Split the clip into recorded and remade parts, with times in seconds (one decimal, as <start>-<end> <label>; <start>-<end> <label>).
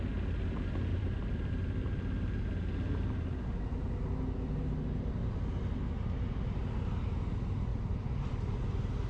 0.0-0.9 recorded; 0.9-1.5 remade; 1.5-7.7 recorded; 7.7-8.3 remade; 8.3-9.1 recorded